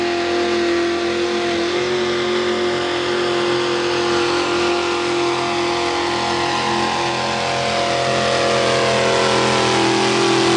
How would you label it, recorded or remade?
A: recorded